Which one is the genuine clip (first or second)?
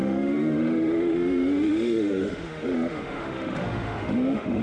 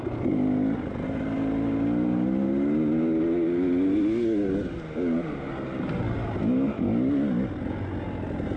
second